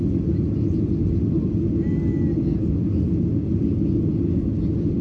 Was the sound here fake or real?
real